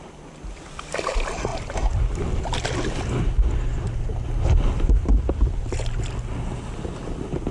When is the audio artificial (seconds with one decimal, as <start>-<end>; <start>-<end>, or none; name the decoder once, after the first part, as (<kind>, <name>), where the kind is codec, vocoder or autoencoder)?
none